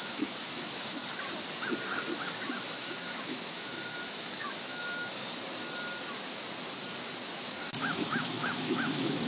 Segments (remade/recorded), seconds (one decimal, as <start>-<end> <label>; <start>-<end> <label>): 0.0-1.0 remade; 1.0-2.5 recorded; 2.5-5.2 remade; 5.2-7.3 recorded; 7.3-9.3 remade

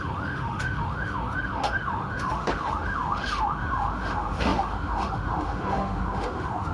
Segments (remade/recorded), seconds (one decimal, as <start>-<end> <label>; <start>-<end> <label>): 0.0-6.7 remade

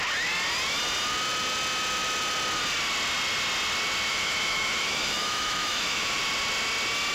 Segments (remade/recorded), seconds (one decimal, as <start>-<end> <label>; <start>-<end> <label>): 0.0-4.1 recorded; 4.1-6.2 remade; 6.2-7.1 recorded

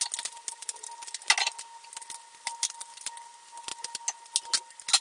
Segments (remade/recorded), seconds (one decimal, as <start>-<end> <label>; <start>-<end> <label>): 0.0-5.0 recorded